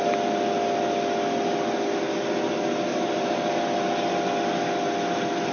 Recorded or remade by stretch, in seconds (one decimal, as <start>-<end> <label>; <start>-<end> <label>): 0.0-2.9 recorded; 2.9-3.5 remade; 3.5-5.5 recorded